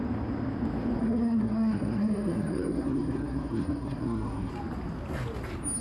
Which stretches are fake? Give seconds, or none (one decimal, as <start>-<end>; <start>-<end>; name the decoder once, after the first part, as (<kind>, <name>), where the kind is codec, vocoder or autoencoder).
1.0-4.5 (codec, SNAC)